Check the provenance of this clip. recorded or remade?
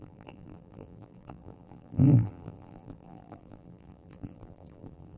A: remade